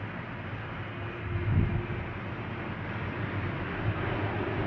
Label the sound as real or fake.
real